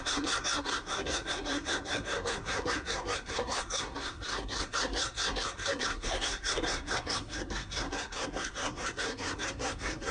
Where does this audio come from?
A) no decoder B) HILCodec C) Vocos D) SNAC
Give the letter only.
D